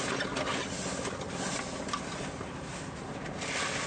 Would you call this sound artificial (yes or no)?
no